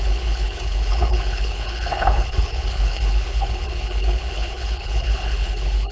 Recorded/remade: remade